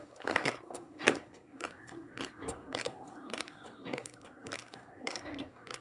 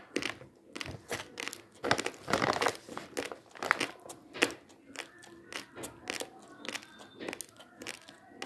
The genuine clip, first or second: second